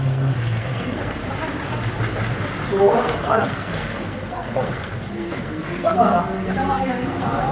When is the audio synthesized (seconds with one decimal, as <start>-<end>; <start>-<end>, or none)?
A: 0.0-1.2; 2.8-7.5